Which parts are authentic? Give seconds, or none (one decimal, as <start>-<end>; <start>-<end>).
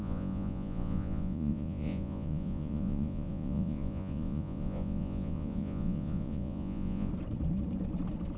7.1-8.4